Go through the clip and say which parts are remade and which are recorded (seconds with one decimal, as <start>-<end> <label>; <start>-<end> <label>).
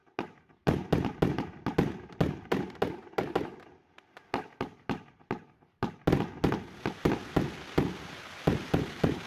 0.0-9.3 recorded